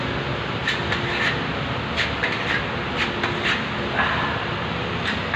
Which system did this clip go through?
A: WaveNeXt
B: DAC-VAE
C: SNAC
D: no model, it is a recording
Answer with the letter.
D